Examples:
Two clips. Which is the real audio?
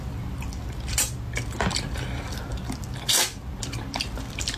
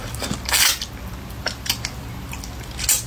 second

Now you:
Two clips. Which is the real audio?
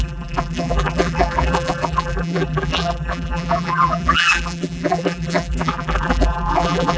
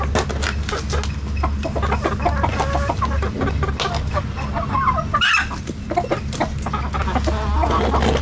second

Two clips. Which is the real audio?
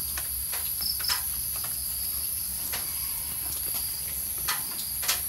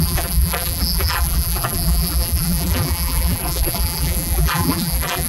first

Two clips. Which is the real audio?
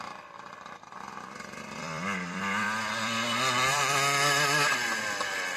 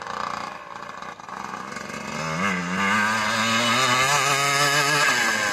second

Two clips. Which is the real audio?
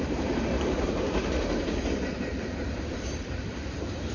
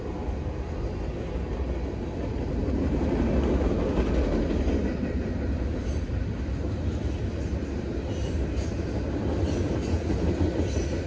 second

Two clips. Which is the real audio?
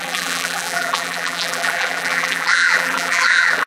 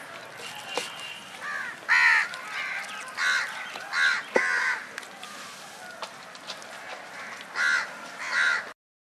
second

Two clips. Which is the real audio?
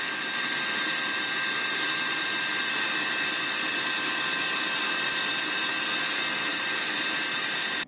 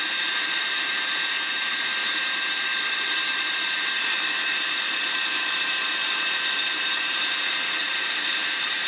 first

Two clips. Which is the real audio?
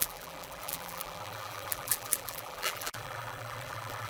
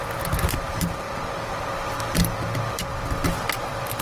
second